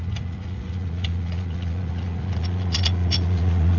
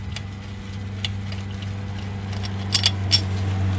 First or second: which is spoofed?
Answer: first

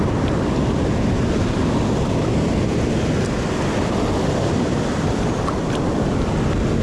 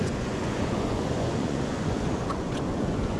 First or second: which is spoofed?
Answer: second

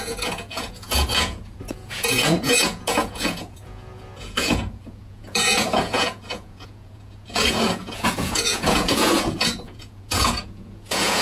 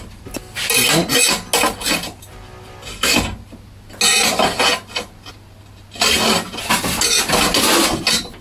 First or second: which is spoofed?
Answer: first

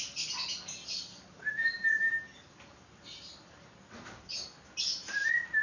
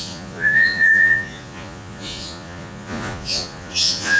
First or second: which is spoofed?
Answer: second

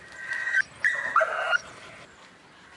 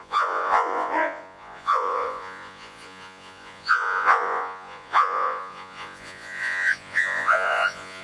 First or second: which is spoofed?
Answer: second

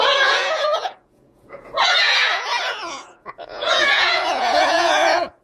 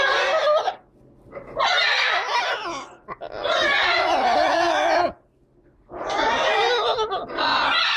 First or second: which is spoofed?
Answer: first